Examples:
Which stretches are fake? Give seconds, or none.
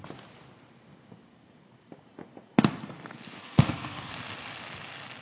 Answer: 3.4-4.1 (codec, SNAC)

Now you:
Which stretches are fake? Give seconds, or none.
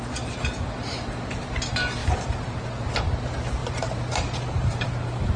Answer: 2.0-2.6 (vocoder, BigVGAN v2); 3.6-4.9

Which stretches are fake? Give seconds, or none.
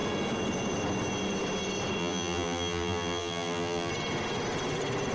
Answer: 2.0-3.9 (vocoder, BigVGAN v2)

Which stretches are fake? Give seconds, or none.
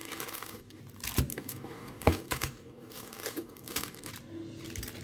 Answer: 0.0-0.8 (codec, DAC); 1.3-4.1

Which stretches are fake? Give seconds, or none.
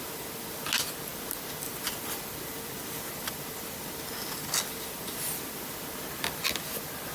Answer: none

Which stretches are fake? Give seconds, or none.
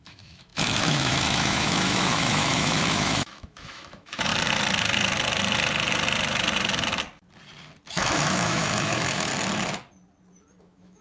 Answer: 0.0-4.3 (autoencoder, DAC-VAE); 7.9-9.3; 10.6-11.0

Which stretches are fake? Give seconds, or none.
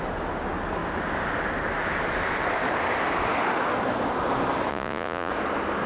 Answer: 4.7-5.3 (vocoder, Vocos)